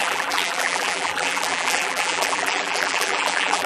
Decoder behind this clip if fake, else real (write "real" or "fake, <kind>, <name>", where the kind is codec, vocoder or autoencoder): fake, vocoder, BigVGAN v2